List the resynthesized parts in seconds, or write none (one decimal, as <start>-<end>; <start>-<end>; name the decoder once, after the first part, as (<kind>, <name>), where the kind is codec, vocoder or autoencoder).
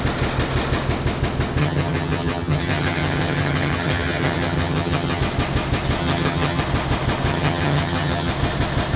1.6-5.2 (vocoder, HiFi-GAN); 6.0-6.6; 7.3-8.3